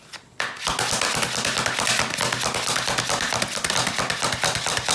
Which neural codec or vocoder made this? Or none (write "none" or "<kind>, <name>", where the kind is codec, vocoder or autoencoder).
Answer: none